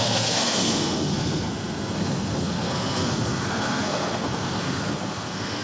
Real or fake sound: fake